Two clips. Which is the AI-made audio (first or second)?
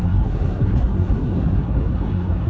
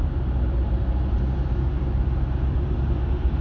first